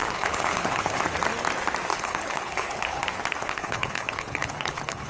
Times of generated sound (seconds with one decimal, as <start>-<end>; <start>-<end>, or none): 0.0-1.0; 1.9-3.0; 3.4-5.1